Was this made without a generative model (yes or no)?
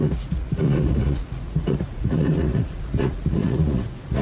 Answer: no